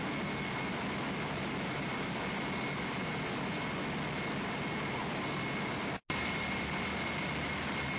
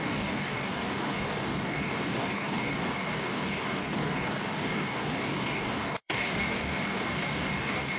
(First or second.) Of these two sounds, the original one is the first